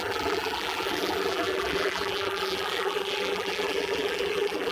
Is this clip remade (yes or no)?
yes